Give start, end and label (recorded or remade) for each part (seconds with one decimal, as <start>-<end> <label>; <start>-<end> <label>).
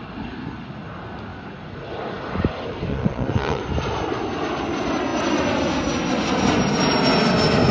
0.0-2.9 recorded; 2.9-3.6 remade; 3.6-7.7 recorded